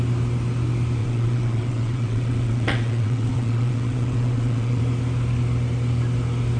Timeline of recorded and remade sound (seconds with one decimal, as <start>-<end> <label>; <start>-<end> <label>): 0.0-1.0 recorded; 1.0-4.8 remade; 4.8-6.6 recorded